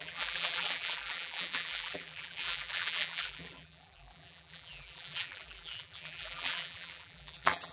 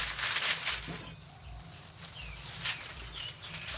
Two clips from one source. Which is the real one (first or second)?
second